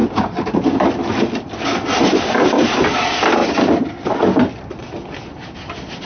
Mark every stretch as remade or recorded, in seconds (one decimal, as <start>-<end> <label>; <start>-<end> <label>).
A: 0.0-6.0 recorded